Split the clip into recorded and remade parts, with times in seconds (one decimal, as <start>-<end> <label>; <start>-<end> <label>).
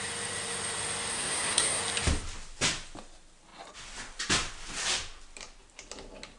0.0-1.1 recorded; 1.1-1.8 remade; 1.8-6.4 recorded